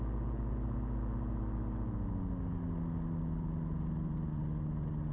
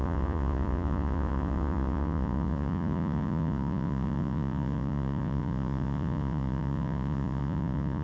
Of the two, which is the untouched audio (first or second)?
first